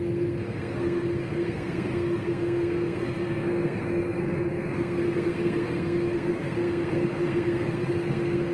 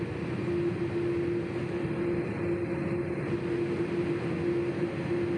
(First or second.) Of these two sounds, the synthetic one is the first